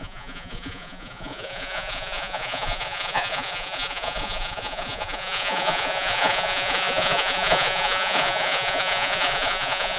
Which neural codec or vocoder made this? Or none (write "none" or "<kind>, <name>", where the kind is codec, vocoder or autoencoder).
vocoder, Vocos